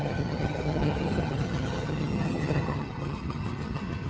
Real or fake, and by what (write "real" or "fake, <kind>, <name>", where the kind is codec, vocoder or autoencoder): fake, vocoder, HiFi-GAN